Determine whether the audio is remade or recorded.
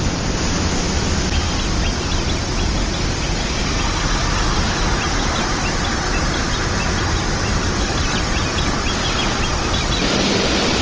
remade